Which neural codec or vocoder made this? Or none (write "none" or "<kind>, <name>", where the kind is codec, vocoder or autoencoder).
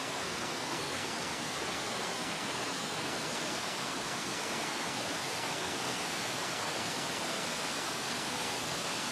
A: codec, SNAC